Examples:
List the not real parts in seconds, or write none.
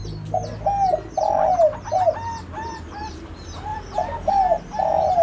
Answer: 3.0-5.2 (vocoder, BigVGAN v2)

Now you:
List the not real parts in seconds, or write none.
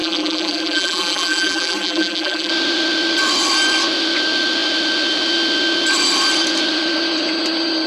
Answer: 0.0-2.5 (vocoder, BigVGAN v2)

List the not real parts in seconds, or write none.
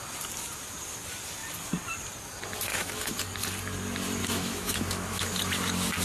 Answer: 2.7-3.2 (autoencoder, DAC-VAE); 4.2-5.4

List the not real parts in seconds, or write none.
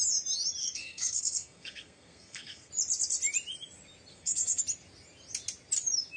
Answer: 0.6-2.7 (codec, SNAC); 4.1-4.6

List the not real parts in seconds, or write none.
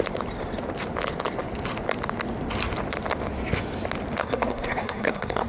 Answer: 4.2-5.5 (codec, SNAC)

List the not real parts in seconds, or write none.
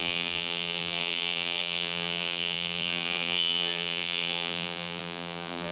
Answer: 0.0-5.7 (vocoder, BigVGAN v2)